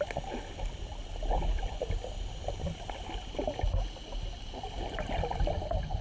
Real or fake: real